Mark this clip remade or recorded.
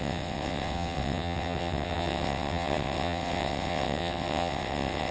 remade